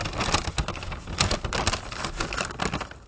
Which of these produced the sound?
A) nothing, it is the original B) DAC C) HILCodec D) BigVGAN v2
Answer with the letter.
A